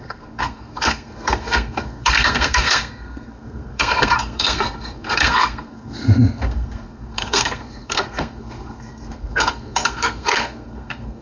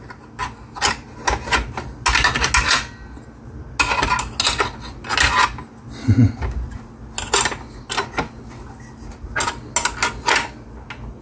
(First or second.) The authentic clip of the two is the second